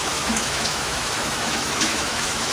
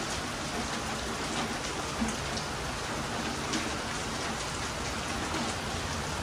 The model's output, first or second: first